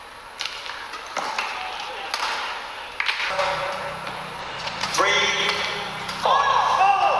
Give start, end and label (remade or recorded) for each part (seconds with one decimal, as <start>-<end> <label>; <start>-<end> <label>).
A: 0.0-4.4 recorded; 4.4-5.0 remade; 5.0-7.2 recorded